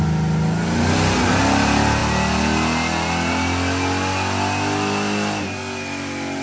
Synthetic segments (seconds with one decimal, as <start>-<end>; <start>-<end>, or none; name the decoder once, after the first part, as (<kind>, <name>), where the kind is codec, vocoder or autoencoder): none